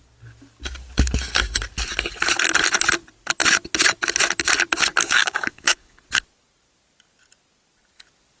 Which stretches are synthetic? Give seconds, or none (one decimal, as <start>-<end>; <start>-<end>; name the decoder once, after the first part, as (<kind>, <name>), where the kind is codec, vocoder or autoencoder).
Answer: 5.0-6.0 (codec, DAC)